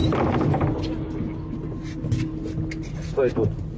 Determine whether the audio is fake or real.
real